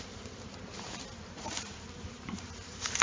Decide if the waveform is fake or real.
fake